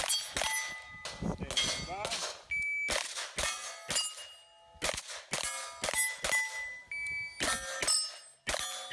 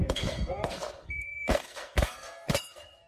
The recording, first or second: first